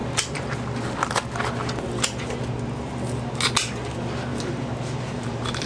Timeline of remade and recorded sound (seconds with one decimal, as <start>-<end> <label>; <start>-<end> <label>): 0.0-4.3 recorded; 4.3-5.7 remade